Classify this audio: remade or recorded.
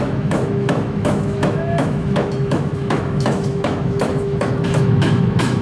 remade